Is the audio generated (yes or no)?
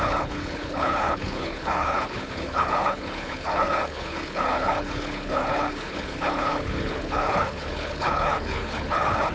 yes